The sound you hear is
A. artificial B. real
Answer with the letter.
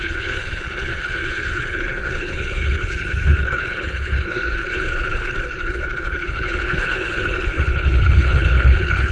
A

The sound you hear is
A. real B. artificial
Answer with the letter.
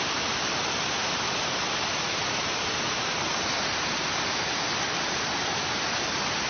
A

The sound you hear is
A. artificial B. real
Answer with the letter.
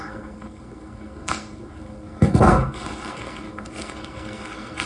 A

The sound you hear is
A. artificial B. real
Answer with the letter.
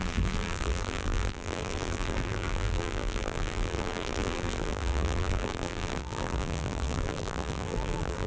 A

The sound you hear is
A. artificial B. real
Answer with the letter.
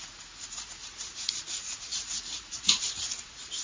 A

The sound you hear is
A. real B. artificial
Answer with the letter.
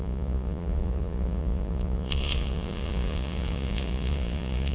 B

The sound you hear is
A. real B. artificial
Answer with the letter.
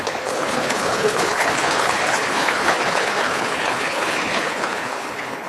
B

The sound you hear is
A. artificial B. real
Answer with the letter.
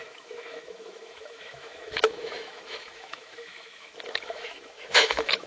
A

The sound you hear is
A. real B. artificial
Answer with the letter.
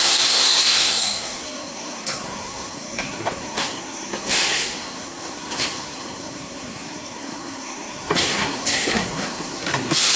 B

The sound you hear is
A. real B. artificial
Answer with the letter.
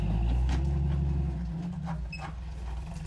A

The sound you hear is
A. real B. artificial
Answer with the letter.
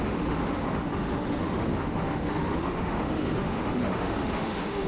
B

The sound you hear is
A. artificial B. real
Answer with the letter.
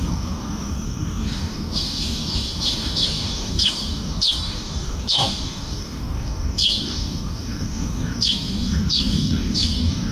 A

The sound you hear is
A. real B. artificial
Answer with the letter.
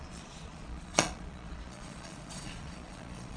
B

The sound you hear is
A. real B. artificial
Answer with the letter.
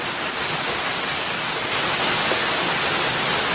A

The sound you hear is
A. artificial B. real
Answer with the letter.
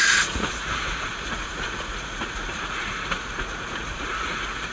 A